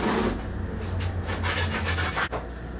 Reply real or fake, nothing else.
real